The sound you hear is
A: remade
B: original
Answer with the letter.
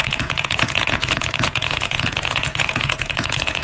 A